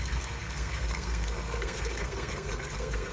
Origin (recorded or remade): remade